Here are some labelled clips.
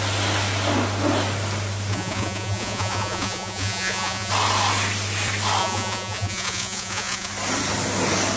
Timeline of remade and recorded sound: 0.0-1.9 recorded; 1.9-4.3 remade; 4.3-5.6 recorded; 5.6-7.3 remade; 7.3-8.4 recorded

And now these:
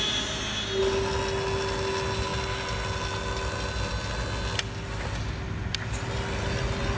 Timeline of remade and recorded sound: 0.0-7.0 recorded